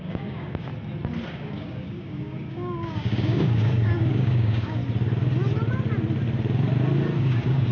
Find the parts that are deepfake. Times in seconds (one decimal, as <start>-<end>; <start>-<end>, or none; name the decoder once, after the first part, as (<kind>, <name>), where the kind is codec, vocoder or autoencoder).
0.0-0.7 (codec, DAC); 1.3-4.8; 7.2-7.7